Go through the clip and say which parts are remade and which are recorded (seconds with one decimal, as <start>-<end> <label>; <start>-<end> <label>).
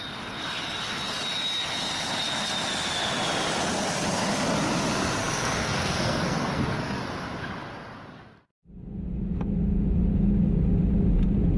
0.0-5.2 recorded; 5.2-7.0 remade; 7.0-11.6 recorded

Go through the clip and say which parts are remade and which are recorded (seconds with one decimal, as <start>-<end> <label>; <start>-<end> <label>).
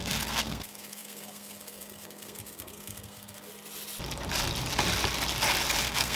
0.0-3.5 remade; 3.5-5.8 recorded; 5.8-6.2 remade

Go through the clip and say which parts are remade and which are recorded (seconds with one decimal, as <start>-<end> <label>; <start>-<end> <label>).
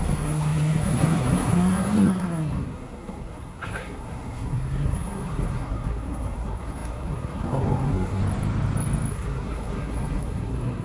0.0-8.2 remade; 8.2-9.1 recorded; 9.1-10.8 remade